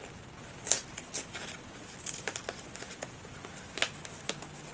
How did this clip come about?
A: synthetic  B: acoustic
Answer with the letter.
B